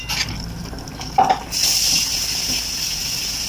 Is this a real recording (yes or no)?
yes